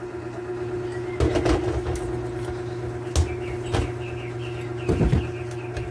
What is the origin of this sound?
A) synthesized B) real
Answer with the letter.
B